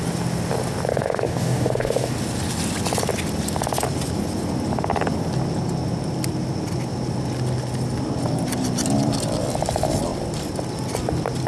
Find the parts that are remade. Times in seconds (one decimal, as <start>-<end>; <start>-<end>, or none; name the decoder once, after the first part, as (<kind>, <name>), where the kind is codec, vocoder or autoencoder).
0.9-2.1 (codec, DAC)